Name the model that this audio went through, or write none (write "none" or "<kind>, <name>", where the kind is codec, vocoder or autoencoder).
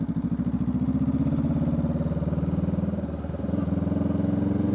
none